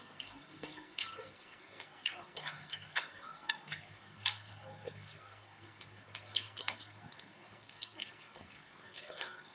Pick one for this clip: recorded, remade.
remade